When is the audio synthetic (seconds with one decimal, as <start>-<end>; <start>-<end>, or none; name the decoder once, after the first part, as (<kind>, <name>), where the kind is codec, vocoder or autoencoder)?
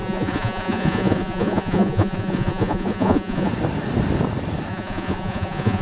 0.0-3.5 (vocoder, Vocos); 4.7-5.8